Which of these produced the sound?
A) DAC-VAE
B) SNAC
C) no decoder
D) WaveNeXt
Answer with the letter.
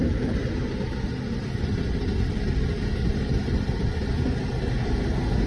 C